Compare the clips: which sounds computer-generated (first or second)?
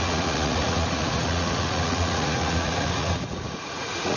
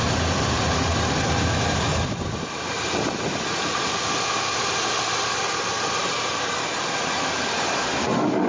first